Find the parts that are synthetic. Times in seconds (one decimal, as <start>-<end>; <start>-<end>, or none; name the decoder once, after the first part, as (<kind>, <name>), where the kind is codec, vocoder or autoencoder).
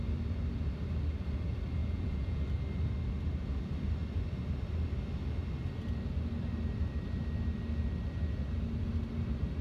1.8-2.4 (vocoder, Vocos)